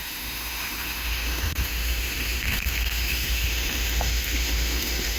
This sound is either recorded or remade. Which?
remade